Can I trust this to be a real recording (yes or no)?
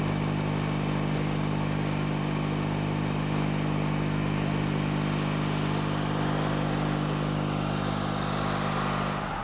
yes